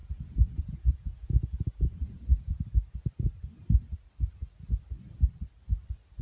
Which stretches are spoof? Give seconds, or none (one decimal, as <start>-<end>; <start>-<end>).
0.0-2.6